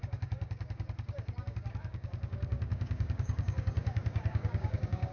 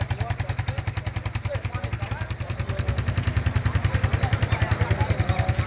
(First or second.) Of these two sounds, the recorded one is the second